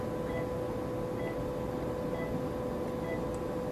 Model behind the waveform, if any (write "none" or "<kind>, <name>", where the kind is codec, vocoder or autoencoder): none